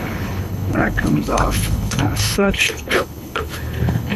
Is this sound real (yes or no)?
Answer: no